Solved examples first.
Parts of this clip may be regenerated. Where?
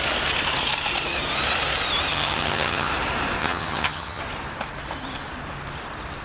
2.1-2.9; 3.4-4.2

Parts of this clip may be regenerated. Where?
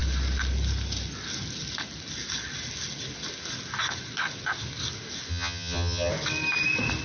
5.3-6.1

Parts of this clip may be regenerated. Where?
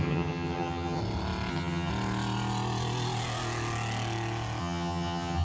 0.0-1.0; 1.5-1.9; 4.6-5.4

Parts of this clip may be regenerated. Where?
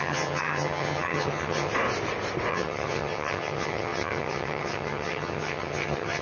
0.0-1.7; 2.5-6.2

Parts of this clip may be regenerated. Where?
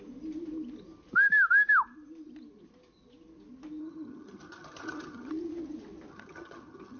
3.8-5.3; 6.1-7.0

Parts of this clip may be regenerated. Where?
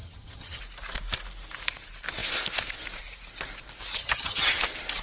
0.0-0.6; 4.0-4.6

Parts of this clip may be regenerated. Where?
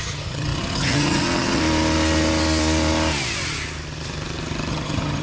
0.0-1.6; 4.7-5.2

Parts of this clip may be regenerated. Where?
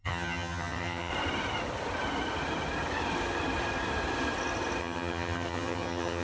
0.0-1.1; 4.8-6.2